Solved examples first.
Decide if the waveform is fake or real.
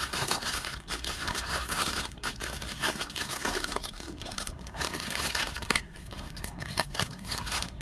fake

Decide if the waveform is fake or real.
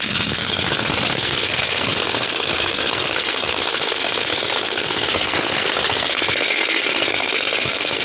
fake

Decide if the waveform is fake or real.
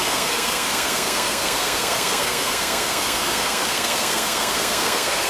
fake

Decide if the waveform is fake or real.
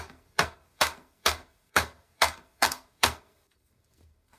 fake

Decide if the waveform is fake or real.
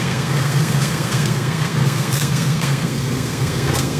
fake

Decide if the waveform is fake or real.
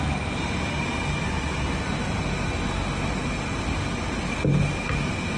real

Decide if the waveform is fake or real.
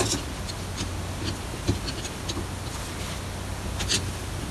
real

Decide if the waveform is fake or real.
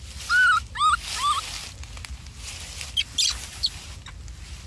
real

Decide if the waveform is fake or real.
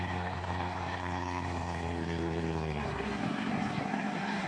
fake